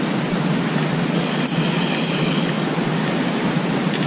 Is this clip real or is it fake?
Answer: real